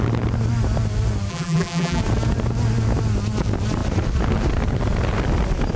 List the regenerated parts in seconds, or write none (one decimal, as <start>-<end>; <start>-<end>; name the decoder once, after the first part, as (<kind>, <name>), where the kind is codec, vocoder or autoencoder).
1.3-2.0 (vocoder, BigVGAN v2)